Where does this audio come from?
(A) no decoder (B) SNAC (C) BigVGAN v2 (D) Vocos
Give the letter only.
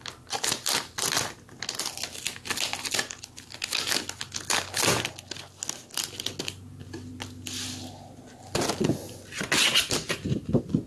A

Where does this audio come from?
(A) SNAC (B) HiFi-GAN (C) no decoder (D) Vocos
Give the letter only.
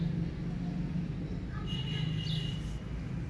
C